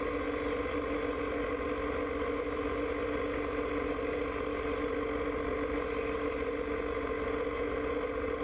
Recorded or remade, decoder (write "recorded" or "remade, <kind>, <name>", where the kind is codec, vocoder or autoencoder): recorded